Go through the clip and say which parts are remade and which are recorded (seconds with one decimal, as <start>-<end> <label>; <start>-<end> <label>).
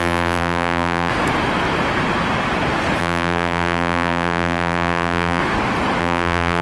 0.0-1.1 remade; 1.1-3.0 recorded; 3.0-5.4 remade; 5.4-6.0 recorded; 6.0-6.6 remade